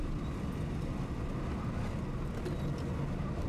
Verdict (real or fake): real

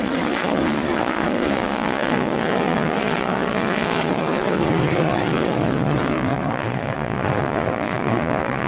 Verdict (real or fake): fake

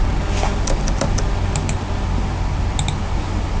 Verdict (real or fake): real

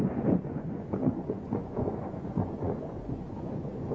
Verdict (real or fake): fake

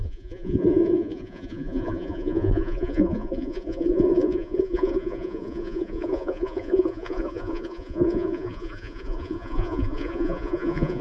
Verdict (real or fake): fake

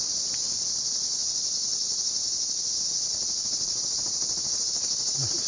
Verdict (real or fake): real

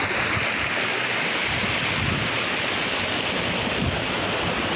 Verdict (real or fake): real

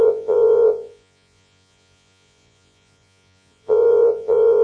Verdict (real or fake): fake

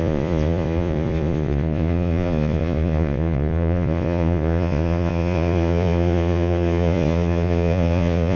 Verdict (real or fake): fake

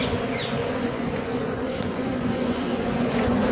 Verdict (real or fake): fake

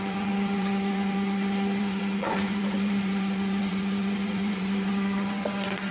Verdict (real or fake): fake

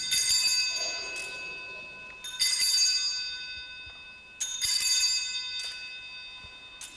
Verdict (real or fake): real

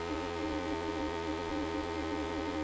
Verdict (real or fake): fake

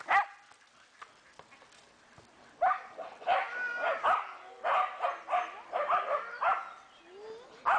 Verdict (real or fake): real